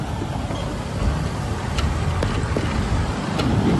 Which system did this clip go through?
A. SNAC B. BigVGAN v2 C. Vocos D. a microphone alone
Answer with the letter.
D